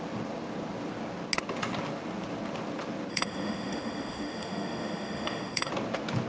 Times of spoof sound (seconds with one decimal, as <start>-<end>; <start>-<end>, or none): 3.1-5.7